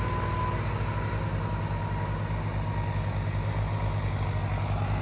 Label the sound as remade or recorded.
recorded